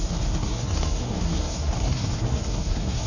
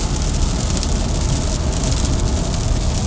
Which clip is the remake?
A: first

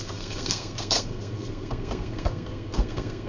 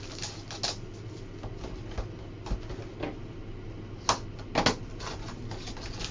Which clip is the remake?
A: first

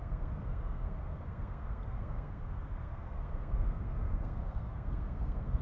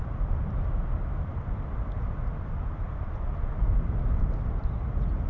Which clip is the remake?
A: first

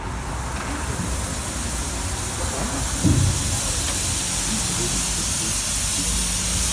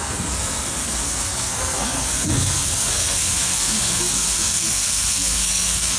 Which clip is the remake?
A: second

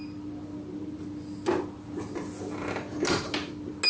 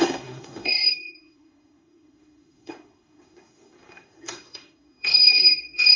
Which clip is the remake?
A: second